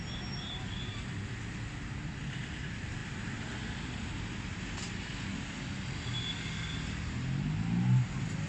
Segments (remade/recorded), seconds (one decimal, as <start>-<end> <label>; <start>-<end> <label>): 0.0-8.5 recorded